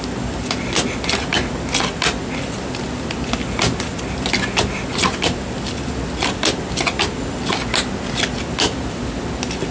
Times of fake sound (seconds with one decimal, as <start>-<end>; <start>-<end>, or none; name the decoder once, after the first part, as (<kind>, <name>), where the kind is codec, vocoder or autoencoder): none

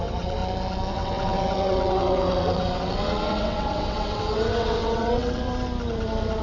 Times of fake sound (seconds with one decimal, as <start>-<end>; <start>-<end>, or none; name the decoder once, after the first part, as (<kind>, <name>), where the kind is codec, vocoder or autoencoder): 0.0-0.4 (vocoder, WaveNeXt); 0.9-5.5

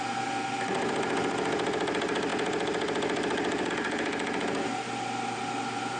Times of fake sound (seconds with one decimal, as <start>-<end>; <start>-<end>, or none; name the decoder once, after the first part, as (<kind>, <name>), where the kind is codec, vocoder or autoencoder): none